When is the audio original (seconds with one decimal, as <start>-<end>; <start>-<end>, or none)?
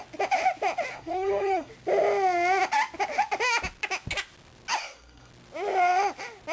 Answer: 0.0-0.9; 1.7-4.8; 5.3-6.5